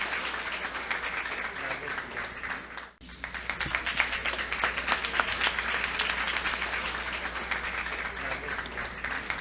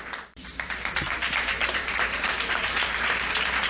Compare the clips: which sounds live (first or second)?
first